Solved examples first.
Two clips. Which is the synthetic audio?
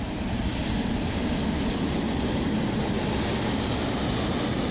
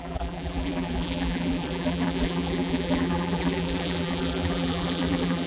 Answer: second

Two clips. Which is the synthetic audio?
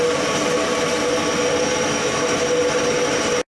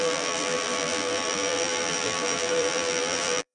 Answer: second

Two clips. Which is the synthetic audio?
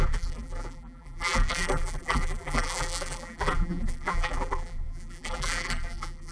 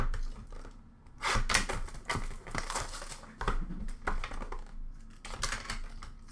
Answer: first